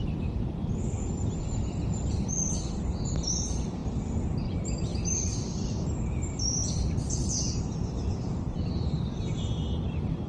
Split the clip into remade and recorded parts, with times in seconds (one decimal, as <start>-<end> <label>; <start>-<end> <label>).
0.0-4.9 remade; 4.9-5.6 recorded; 5.6-10.3 remade